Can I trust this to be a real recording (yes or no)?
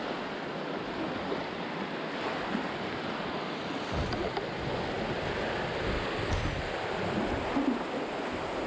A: yes